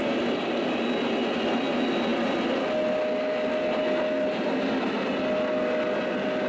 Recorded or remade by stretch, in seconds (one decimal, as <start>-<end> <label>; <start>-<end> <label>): 0.0-6.5 recorded